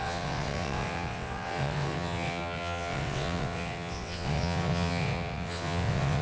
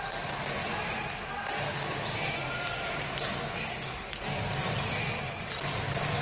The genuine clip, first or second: second